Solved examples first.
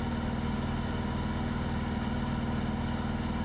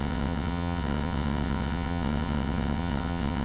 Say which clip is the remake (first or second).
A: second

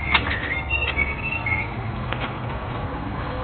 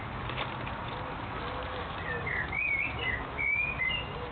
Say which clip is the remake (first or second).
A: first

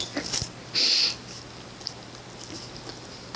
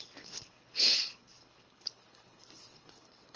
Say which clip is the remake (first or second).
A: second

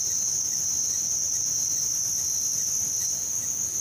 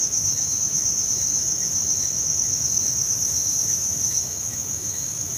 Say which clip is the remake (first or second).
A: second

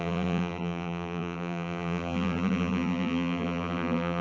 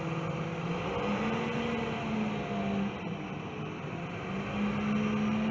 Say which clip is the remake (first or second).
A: first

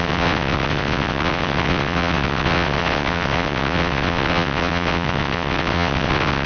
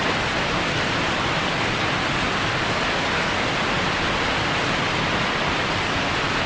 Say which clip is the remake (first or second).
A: first